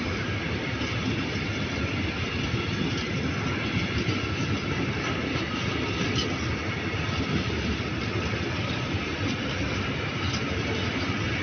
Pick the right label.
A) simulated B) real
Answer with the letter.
B